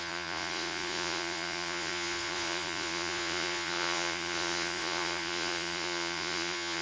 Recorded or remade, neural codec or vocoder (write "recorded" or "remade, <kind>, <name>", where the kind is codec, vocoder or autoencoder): remade, vocoder, Vocos